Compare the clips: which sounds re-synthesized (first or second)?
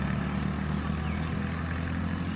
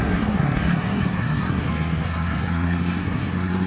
second